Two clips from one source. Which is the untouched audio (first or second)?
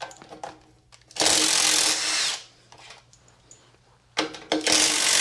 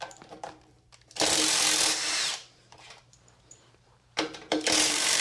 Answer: first